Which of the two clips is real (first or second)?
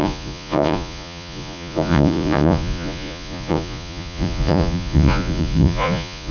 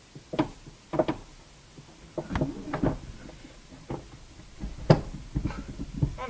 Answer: second